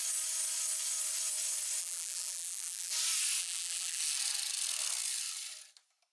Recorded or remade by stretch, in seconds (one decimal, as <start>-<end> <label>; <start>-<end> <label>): 0.0-1.8 recorded; 1.8-2.9 remade; 2.9-3.4 recorded; 3.4-4.0 remade; 4.0-6.1 recorded